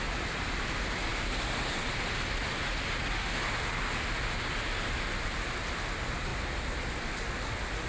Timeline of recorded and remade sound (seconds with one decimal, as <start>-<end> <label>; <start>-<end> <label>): 0.0-7.9 recorded